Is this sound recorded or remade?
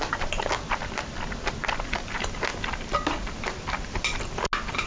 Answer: recorded